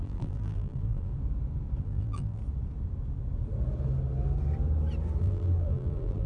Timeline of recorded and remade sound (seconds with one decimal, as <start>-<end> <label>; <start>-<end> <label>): 0.0-1.1 remade; 1.1-1.8 recorded; 1.8-2.4 remade; 2.4-5.2 recorded; 5.2-6.3 remade